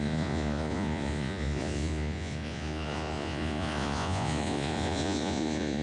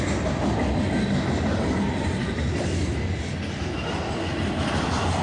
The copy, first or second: first